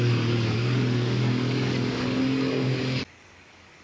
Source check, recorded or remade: remade